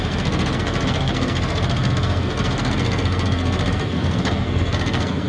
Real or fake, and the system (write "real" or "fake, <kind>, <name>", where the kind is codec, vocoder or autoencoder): fake, codec, SNAC